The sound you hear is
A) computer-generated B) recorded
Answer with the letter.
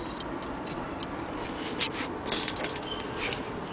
B